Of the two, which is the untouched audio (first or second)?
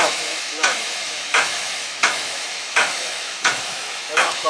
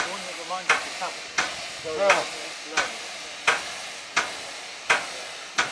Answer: second